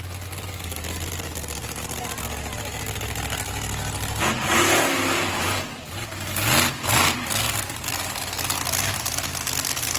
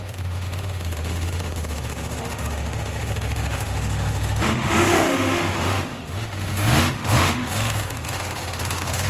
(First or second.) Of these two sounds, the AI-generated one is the second